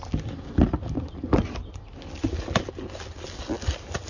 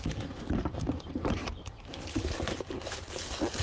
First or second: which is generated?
second